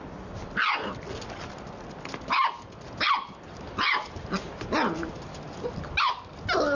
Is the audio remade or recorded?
recorded